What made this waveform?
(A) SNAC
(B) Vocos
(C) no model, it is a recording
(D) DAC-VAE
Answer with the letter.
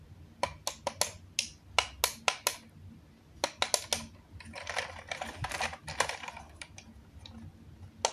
C